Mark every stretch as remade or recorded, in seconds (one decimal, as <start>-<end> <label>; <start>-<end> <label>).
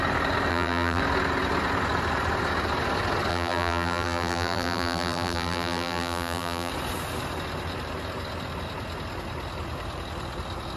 0.0-0.5 recorded; 0.5-1.0 remade; 1.0-3.3 recorded; 3.3-6.7 remade; 6.7-10.8 recorded